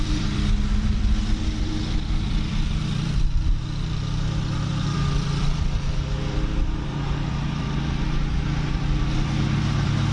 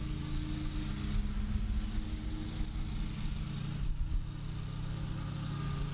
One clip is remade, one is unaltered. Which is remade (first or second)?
first